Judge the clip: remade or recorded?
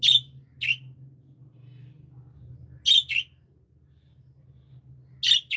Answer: recorded